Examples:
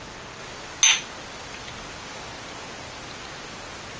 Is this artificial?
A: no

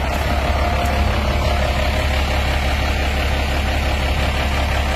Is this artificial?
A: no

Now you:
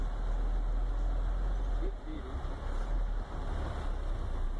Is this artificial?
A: no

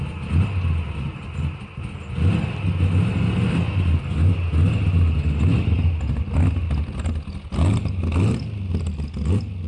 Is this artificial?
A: no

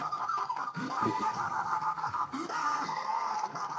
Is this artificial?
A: yes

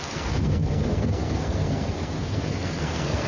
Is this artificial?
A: yes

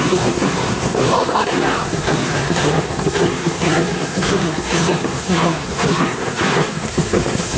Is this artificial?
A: yes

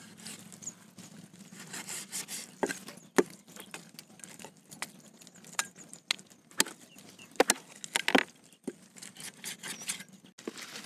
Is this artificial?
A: no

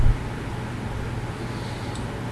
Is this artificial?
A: no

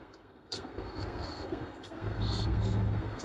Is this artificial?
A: yes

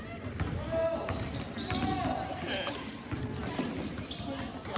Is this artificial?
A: no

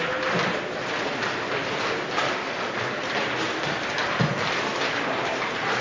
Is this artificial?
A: no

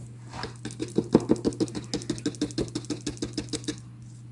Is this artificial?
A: no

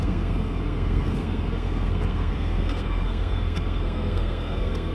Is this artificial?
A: yes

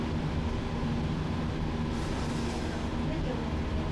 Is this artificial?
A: no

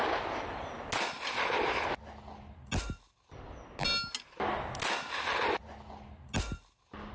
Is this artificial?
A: no